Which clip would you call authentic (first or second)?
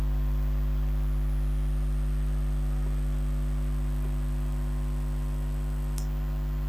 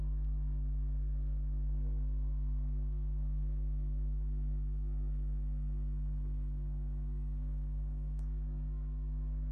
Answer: first